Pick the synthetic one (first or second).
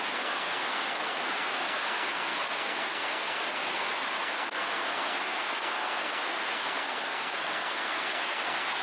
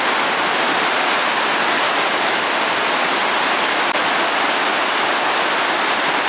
first